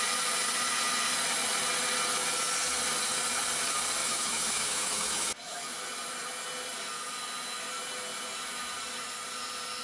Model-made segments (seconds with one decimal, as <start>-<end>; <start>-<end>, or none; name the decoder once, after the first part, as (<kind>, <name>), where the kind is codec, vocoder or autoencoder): 4.0-5.3 (autoencoder, DAC-VAE)